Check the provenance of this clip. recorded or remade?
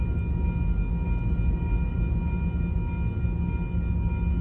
recorded